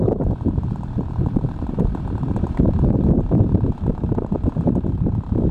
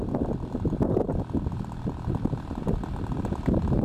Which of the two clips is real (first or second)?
second